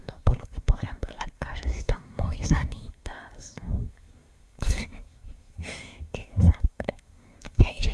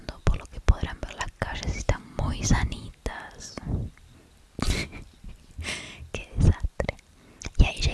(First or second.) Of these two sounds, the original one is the second